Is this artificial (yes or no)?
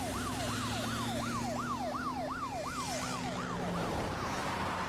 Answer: no